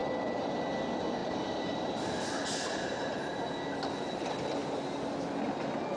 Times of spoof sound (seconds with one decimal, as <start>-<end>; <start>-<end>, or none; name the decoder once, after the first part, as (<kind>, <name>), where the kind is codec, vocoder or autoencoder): 1.2-3.3 (vocoder, BigVGAN v2)